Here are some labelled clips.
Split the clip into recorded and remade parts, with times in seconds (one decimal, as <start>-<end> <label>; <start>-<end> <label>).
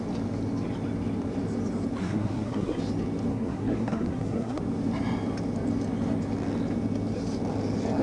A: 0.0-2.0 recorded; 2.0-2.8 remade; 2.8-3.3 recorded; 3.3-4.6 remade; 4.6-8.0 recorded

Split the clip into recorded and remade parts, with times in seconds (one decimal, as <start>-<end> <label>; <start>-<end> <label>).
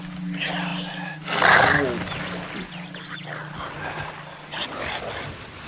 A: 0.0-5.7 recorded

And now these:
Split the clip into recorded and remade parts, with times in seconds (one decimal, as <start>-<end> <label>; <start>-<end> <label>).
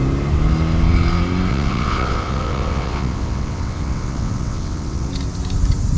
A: 0.0-1.5 recorded; 1.5-5.1 remade; 5.1-6.0 recorded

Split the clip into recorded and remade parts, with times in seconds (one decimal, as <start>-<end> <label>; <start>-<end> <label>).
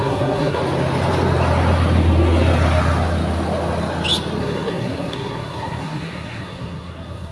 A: 0.0-0.6 remade; 0.6-4.4 recorded; 4.4-7.3 remade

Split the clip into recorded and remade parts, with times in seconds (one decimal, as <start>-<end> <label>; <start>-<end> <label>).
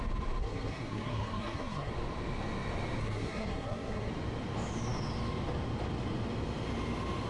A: 0.0-0.4 recorded; 0.4-1.9 remade; 1.9-3.0 recorded; 3.0-4.1 remade; 4.1-7.3 recorded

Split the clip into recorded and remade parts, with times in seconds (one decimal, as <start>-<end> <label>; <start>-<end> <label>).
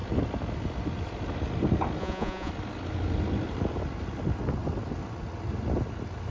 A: 0.0-2.0 recorded; 2.0-2.5 remade; 2.5-6.3 recorded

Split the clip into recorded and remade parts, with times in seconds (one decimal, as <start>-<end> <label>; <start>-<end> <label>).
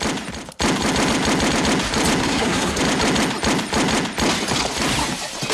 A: 0.0-2.2 recorded; 2.2-2.8 remade; 2.8-5.5 recorded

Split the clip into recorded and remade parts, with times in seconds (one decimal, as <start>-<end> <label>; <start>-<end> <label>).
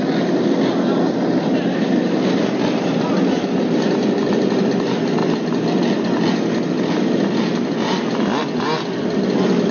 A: 0.0-9.7 recorded